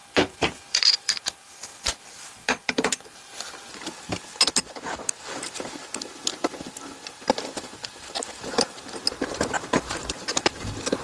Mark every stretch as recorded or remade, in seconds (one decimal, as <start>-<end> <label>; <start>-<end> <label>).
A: 0.0-1.2 remade; 1.2-1.7 recorded; 1.7-4.3 remade; 4.3-11.0 recorded